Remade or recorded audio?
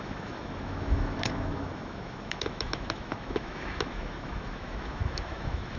remade